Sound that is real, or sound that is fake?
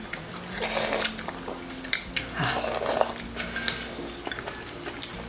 real